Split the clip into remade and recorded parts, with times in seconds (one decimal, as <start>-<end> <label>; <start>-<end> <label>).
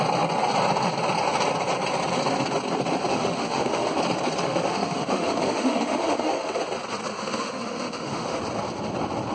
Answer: 0.0-3.1 recorded; 3.1-4.0 remade; 4.0-4.4 recorded; 4.4-6.6 remade; 6.6-7.1 recorded; 7.1-8.4 remade; 8.4-9.3 recorded